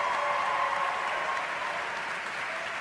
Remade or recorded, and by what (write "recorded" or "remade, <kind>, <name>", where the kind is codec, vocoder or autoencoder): recorded